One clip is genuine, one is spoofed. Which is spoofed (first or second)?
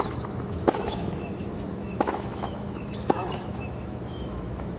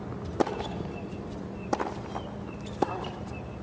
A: first